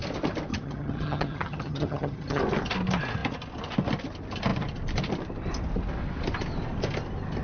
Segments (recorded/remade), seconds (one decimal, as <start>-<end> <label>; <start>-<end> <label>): 0.0-0.5 recorded; 0.5-2.4 remade; 2.4-7.4 recorded